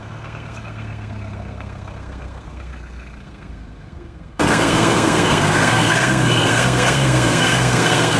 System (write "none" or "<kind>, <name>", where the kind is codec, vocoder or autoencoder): codec, SNAC